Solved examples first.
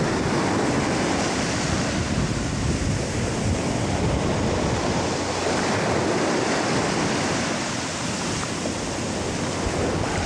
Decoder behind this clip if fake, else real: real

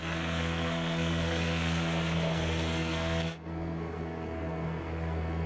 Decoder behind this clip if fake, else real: fake, codec, SNAC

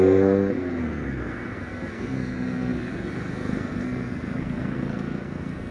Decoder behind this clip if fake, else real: fake, codec, SNAC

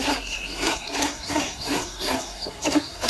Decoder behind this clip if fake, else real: fake, codec, SNAC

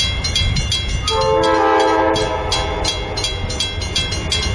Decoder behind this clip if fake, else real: real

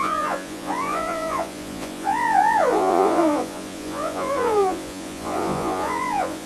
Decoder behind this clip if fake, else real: fake, vocoder, Vocos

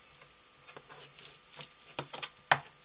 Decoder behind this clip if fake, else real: real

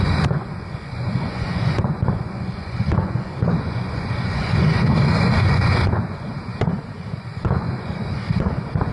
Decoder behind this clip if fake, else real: fake, vocoder, Vocos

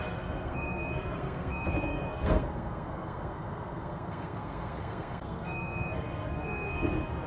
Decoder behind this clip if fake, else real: fake, codec, SNAC